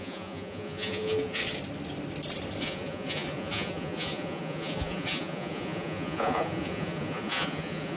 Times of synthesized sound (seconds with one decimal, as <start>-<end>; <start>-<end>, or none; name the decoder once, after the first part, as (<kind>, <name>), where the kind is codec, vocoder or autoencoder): 0.0-1.4 (vocoder, Vocos); 2.6-8.0